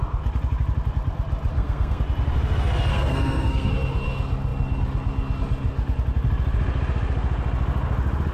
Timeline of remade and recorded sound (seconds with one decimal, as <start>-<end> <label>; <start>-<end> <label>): 0.0-1.5 recorded; 1.5-2.0 remade; 2.0-2.9 recorded; 2.9-3.7 remade; 3.7-8.3 recorded